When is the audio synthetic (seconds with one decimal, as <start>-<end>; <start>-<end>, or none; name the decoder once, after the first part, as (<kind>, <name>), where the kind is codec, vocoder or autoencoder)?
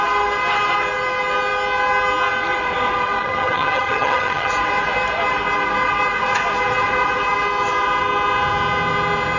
3.2-4.5 (vocoder, HiFi-GAN)